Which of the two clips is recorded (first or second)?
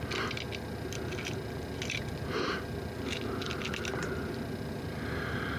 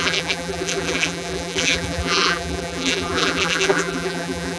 first